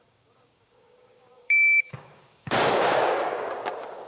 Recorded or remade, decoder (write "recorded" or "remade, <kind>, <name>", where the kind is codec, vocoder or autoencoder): remade, codec, DAC